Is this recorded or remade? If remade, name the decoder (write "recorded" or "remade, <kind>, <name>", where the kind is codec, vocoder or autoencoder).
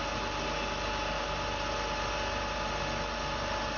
recorded